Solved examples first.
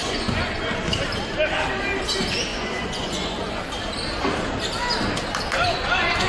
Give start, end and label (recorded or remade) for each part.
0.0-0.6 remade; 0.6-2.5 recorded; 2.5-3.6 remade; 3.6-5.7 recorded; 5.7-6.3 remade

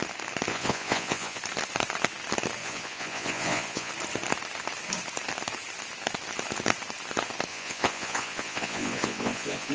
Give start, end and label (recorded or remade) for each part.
0.0-0.5 recorded; 0.5-1.4 remade; 1.4-2.6 recorded; 2.6-3.9 remade; 3.9-7.5 recorded; 7.5-9.7 remade

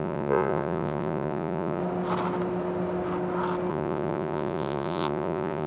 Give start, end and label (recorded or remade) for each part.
0.0-1.8 remade; 1.8-3.7 recorded; 3.7-5.7 remade

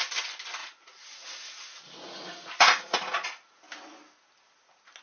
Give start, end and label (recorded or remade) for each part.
0.0-0.6 recorded; 0.6-3.6 remade; 3.6-5.0 recorded

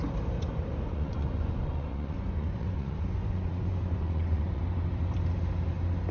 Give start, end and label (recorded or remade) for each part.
0.0-0.9 recorded; 0.9-4.6 remade; 4.6-6.1 recorded

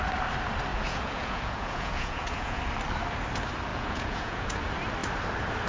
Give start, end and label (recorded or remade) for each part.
0.0-0.7 recorded; 0.7-2.6 remade; 2.6-3.7 recorded; 3.7-4.6 remade; 4.6-5.7 recorded

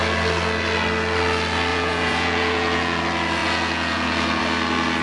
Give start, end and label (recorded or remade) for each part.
0.0-1.7 recorded; 1.7-3.0 remade; 3.0-3.4 recorded; 3.4-4.4 remade; 4.4-5.0 recorded

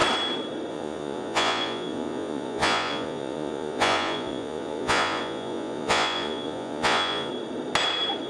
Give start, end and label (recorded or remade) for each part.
0.0-0.7 recorded; 0.7-7.3 remade; 7.3-8.3 recorded